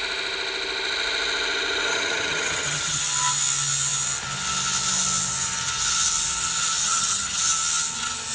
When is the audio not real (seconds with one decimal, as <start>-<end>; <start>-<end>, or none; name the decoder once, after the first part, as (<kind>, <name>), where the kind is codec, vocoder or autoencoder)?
1.9-3.0 (vocoder, HiFi-GAN); 6.8-7.4